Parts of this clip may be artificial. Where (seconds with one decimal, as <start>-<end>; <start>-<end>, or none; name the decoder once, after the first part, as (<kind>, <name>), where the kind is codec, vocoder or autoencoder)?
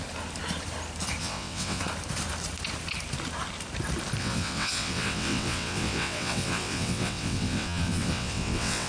1.2-1.8 (vocoder, WaveNeXt); 4.2-8.9